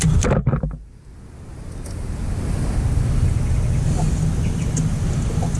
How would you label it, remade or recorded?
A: recorded